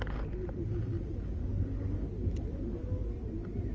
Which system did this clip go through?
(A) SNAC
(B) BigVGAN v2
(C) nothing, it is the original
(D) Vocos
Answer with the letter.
C